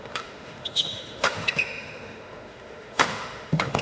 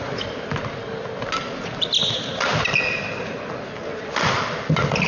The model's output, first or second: first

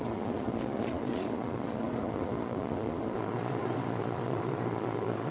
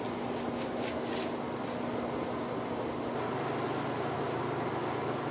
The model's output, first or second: first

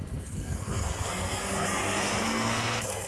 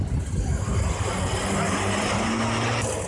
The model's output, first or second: first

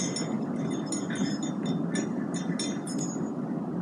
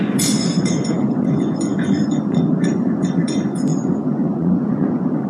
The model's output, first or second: second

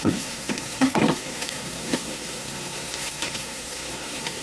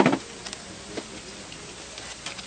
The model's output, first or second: first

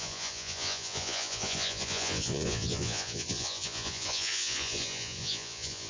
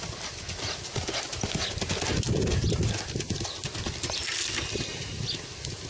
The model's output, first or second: first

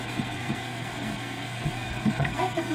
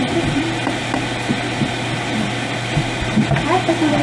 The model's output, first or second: first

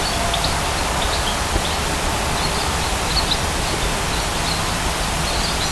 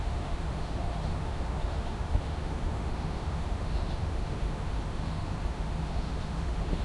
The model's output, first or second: second